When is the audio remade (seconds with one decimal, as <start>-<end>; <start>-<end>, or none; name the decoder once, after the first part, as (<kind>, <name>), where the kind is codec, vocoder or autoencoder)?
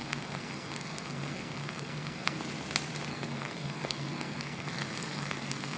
0.0-2.4 (codec, SNAC); 3.1-5.8